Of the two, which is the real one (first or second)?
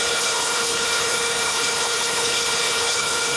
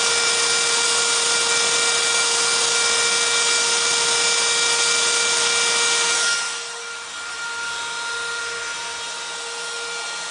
second